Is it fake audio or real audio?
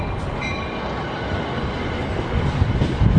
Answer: real